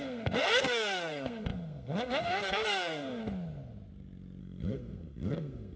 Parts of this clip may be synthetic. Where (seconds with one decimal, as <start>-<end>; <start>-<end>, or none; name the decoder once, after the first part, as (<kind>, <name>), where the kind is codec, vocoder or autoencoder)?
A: 0.0-3.2 (codec, SNAC); 4.4-5.8